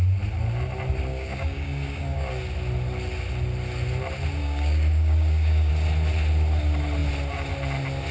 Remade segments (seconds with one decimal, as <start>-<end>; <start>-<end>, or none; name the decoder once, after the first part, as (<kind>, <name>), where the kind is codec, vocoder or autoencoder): 1.1-2.3 (codec, DAC); 4.4-5.7

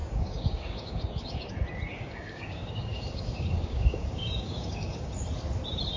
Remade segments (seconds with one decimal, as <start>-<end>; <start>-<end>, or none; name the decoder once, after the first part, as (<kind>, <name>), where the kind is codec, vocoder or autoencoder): 0.0-1.5 (codec, DAC); 1.9-5.1

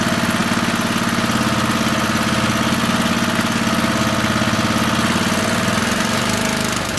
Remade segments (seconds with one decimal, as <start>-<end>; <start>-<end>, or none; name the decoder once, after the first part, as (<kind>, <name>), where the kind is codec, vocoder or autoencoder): none

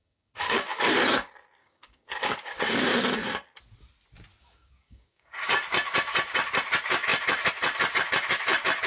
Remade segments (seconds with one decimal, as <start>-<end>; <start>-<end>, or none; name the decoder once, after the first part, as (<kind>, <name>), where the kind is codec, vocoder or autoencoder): 0.0-0.9 (codec, DAC); 1.6-2.9; 4.4-5.5

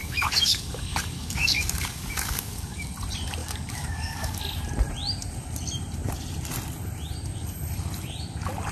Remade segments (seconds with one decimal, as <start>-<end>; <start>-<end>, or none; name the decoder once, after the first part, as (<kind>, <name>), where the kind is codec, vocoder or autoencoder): 0.0-2.9 (codec, DAC); 3.4-4.4

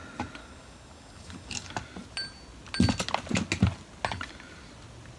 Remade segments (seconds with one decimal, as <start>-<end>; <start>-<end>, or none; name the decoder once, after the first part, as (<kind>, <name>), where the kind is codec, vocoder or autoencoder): 0.4-1.7 (codec, DAC)

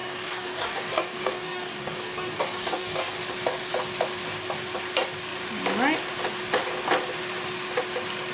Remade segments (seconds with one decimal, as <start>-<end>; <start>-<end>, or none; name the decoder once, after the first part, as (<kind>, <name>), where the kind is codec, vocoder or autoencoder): 0.0-3.2 (codec, DAC)